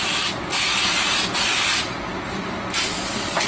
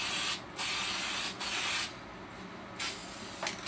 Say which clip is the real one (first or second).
second